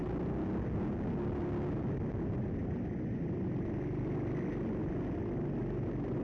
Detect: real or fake real